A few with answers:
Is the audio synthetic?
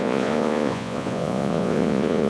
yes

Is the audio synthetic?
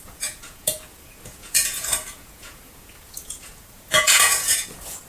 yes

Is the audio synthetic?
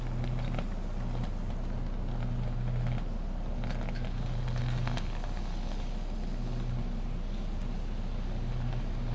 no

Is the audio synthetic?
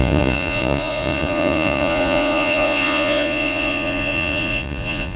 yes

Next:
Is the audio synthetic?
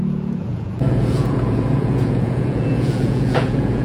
yes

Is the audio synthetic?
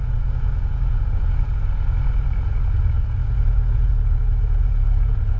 yes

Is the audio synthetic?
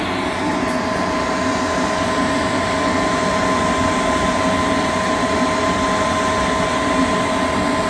no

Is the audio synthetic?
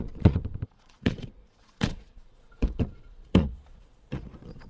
yes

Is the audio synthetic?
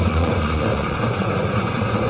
yes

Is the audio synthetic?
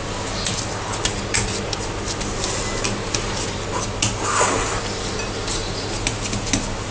no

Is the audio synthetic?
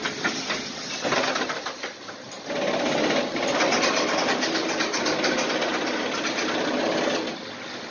no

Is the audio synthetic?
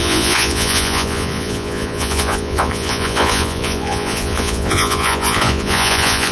yes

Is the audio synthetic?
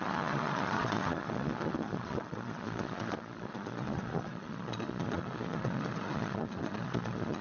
yes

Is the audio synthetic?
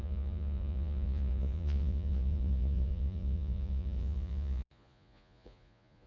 yes